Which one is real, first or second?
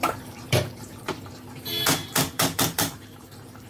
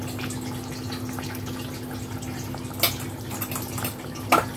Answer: second